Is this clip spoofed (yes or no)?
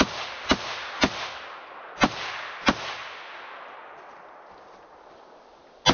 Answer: no